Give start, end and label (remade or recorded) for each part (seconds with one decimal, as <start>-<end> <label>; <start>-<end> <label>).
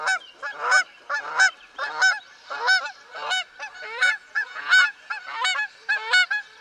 0.0-4.0 recorded; 4.0-5.1 remade; 5.1-6.6 recorded